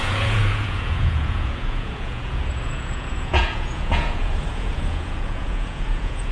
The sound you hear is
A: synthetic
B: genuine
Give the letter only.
A